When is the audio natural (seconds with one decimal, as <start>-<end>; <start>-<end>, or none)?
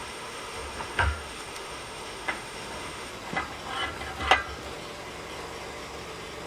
3.1-6.5